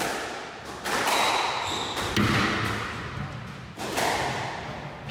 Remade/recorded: recorded